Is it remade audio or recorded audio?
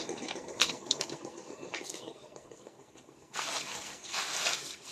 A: remade